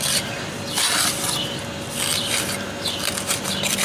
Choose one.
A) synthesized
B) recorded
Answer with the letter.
B